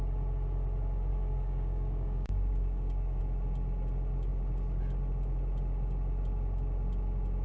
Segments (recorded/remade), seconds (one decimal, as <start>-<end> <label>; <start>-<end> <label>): 0.0-1.1 recorded; 1.1-3.2 remade; 3.2-7.4 recorded